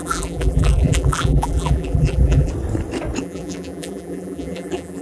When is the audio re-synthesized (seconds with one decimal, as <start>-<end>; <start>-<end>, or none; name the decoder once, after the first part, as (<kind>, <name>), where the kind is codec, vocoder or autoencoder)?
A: 0.0-2.5 (vocoder, BigVGAN v2); 3.2-5.0